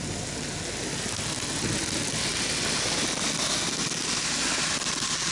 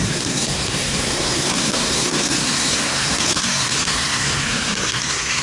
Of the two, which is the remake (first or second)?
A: second